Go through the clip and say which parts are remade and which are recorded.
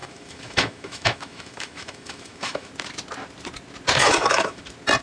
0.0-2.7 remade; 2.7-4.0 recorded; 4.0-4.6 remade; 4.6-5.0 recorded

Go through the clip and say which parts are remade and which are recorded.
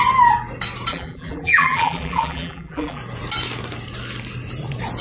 0.0-0.9 recorded; 0.9-3.0 remade; 3.0-5.0 recorded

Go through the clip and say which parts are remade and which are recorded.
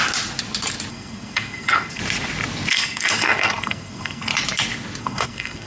0.0-0.9 recorded; 0.9-2.0 remade; 2.0-2.7 recorded; 2.7-4.3 remade; 4.3-5.0 recorded; 5.0-5.7 remade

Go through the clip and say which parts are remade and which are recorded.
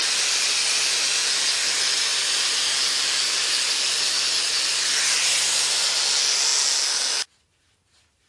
0.0-8.3 recorded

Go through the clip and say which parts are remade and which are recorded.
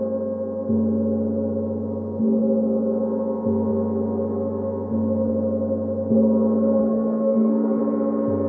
0.0-6.8 recorded; 6.8-7.8 remade; 7.8-8.5 recorded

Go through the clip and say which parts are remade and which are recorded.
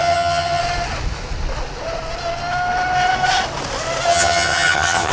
0.0-0.6 remade; 0.6-4.1 recorded; 4.1-5.1 remade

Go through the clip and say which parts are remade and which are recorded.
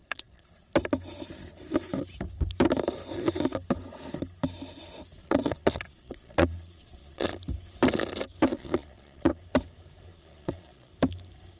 0.0-0.7 remade; 0.7-5.2 recorded; 5.2-7.3 remade; 7.3-8.5 recorded; 8.5-9.4 remade; 9.4-10.1 recorded; 10.1-10.9 remade; 10.9-11.6 recorded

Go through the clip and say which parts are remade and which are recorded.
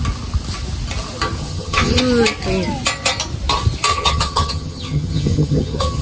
0.0-1.4 recorded; 1.4-2.0 remade; 2.0-3.9 recorded; 3.9-6.0 remade